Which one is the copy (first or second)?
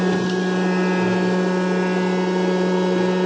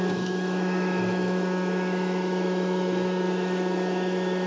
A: second